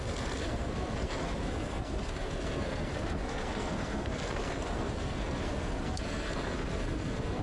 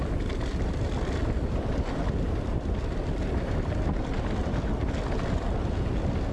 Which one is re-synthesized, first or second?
first